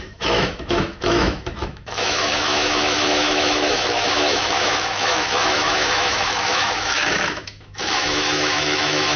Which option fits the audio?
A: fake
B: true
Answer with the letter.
A